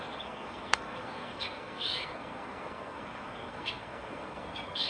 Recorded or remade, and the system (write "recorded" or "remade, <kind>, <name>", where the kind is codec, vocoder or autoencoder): remade, codec, SNAC